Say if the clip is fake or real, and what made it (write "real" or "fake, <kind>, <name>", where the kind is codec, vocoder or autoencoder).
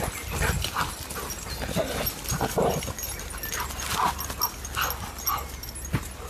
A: real